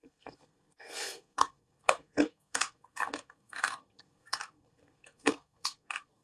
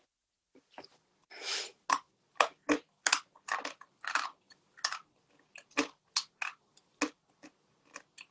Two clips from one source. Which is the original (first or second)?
second